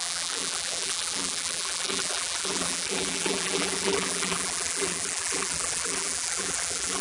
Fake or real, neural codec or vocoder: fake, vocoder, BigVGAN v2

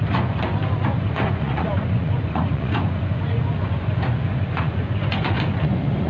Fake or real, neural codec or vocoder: fake, vocoder, Vocos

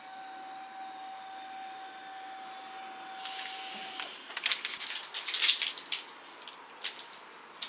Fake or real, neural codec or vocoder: real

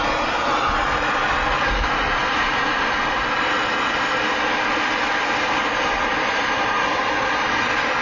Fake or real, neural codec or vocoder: real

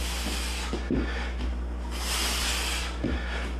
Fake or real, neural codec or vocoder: real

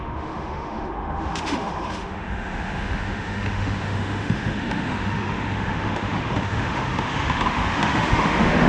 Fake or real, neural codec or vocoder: fake, autoencoder, DAC-VAE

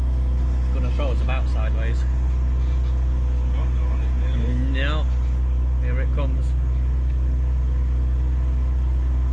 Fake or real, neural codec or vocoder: real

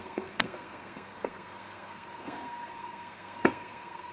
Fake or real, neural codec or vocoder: fake, codec, SNAC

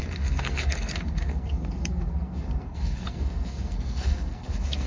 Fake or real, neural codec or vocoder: fake, codec, SNAC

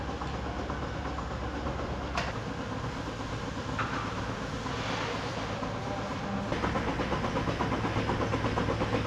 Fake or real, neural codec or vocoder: real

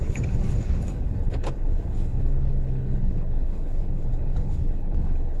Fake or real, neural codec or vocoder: fake, codec, HILCodec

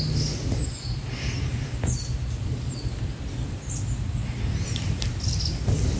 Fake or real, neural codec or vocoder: real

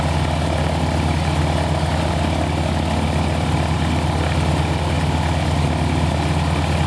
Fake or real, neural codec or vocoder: real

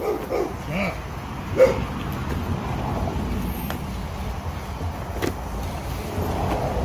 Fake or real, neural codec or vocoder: real